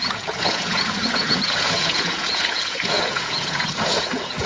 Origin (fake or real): fake